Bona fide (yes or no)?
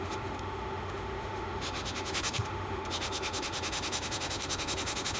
no